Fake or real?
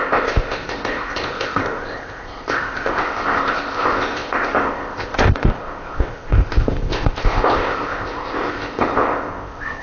fake